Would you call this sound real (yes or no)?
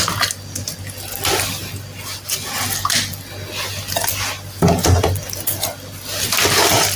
yes